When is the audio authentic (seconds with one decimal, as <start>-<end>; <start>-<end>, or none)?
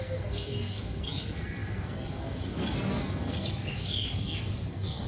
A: none